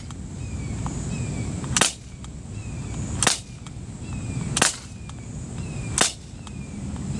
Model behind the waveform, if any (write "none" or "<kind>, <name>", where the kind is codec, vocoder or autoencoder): none